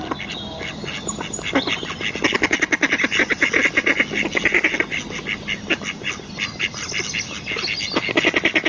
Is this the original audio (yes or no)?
yes